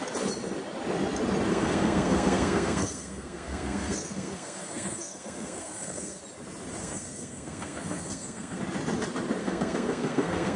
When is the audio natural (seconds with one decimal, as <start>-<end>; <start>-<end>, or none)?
0.0-1.5; 6.2-6.8; 8.6-9.4

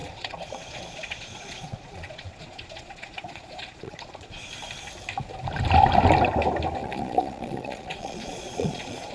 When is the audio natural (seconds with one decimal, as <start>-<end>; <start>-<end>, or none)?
4.5-6.8

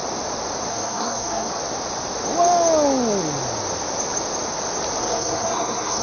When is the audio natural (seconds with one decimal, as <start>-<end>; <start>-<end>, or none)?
0.0-0.7; 1.5-5.0

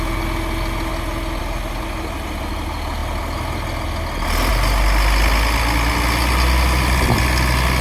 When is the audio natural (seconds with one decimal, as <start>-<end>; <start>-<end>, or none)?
0.0-7.8

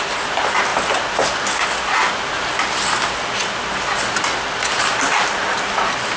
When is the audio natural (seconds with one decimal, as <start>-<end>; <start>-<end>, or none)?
0.0-6.2

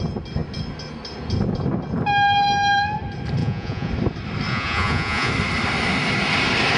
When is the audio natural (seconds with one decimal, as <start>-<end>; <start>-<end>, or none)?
0.0-3.4; 3.9-4.5; 5.3-6.8

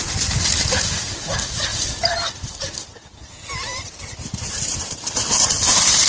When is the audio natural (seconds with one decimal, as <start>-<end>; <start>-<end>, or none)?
0.0-6.1

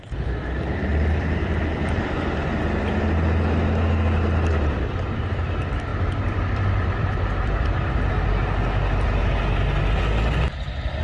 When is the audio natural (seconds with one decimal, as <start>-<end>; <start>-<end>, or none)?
0.0-0.9; 2.6-5.9; 8.0-11.0